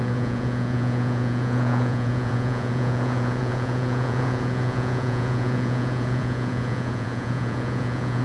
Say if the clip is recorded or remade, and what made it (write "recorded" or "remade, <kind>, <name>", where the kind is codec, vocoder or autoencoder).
remade, vocoder, Vocos